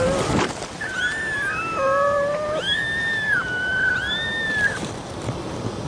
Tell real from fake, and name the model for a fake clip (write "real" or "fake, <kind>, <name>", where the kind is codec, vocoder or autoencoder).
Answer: real